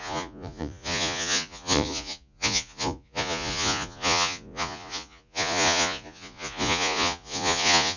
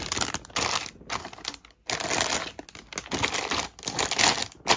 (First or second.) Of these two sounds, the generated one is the first